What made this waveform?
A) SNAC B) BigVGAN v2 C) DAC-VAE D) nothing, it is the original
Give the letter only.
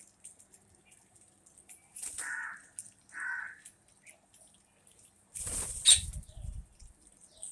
D